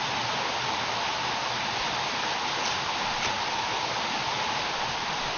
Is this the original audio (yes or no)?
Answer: yes